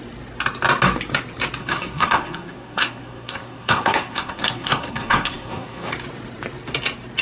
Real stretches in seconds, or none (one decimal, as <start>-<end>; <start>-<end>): 0.0-1.6; 5.9-7.2